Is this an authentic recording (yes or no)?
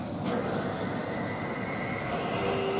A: yes